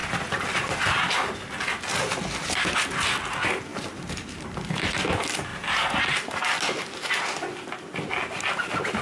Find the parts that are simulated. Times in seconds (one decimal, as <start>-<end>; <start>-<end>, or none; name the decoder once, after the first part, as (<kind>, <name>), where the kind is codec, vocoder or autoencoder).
0.0-1.4 (vocoder, BigVGAN v2); 3.7-4.8; 5.5-6.4